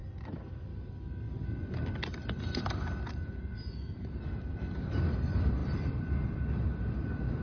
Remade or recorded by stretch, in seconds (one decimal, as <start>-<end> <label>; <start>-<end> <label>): 0.0-5.6 recorded; 5.6-7.4 remade